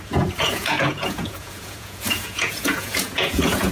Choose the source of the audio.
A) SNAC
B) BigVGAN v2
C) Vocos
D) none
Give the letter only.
C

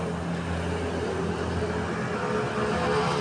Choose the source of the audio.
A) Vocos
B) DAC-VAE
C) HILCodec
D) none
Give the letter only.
D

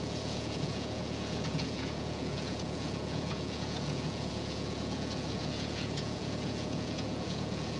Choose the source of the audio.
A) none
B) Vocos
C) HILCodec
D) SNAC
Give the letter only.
B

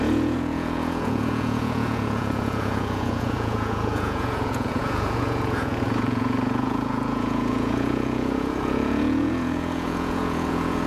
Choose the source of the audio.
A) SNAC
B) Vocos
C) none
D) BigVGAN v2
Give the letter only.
B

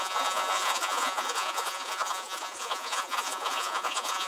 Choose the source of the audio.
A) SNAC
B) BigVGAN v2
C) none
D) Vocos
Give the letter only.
D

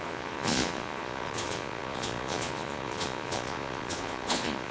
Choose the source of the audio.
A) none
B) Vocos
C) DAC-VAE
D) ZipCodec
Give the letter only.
B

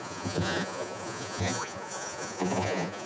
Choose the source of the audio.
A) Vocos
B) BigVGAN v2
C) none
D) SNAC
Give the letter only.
A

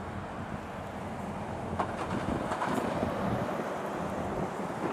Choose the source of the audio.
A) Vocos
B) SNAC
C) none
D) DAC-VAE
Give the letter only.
C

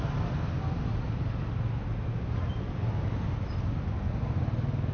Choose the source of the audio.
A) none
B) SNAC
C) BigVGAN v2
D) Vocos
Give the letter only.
A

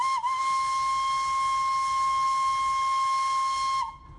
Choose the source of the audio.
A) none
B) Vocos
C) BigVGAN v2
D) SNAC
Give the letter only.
A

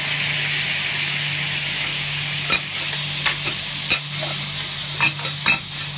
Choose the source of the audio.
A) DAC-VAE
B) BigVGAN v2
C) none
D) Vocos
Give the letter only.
C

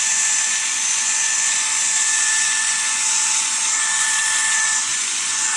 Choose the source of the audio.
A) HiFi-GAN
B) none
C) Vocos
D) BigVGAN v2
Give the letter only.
C